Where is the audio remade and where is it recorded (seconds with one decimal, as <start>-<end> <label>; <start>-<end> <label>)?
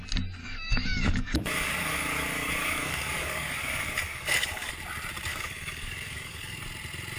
0.0-0.4 recorded; 0.4-4.7 remade; 4.7-5.3 recorded; 5.3-6.6 remade; 6.6-7.2 recorded